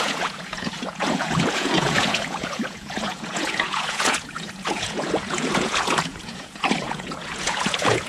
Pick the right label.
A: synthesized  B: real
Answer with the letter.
A